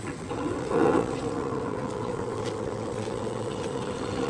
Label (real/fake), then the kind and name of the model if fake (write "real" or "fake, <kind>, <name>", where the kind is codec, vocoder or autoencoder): fake, vocoder, WaveNeXt